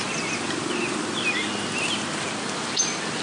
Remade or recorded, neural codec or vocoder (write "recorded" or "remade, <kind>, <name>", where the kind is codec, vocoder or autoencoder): recorded